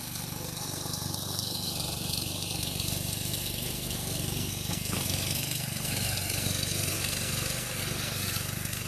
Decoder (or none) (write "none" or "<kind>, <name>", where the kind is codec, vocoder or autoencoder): codec, SNAC